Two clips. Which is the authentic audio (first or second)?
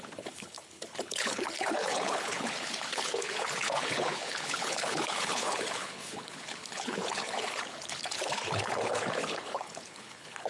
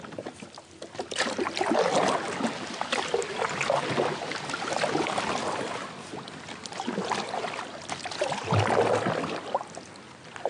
second